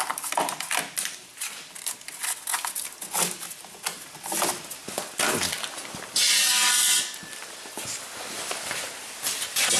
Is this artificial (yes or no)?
no